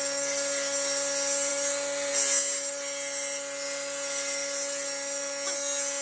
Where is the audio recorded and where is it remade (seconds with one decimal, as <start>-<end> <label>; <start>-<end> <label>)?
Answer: 0.0-6.0 recorded